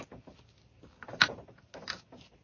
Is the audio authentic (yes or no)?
yes